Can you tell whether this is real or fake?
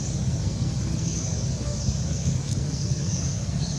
fake